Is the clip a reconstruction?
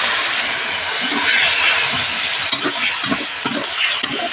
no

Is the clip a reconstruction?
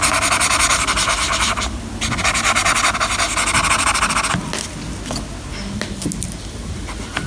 no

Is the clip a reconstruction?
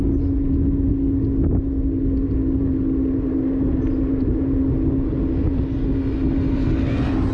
no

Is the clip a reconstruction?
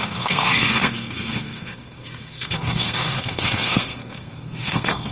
yes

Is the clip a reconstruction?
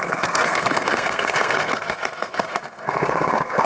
yes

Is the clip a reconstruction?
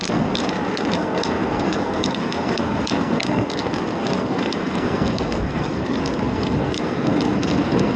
yes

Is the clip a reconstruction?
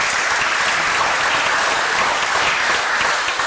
no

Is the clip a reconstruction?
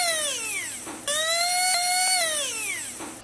no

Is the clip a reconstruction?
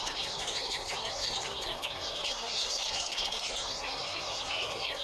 yes